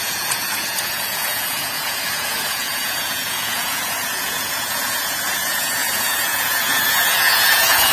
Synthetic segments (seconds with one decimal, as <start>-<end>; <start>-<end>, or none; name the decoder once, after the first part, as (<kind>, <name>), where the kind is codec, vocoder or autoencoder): 0.0-7.9 (vocoder, Vocos)